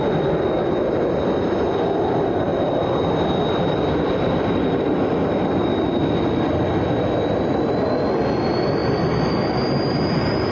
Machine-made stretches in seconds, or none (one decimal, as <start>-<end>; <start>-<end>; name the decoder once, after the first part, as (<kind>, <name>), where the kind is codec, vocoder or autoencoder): 8.8-9.3 (vocoder, BigVGAN v2)